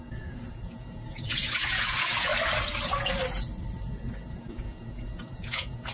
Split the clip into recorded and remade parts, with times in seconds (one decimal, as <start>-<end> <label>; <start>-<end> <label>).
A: 0.0-2.3 remade; 2.3-3.9 recorded; 3.9-5.9 remade